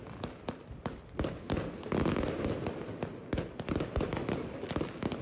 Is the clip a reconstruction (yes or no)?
no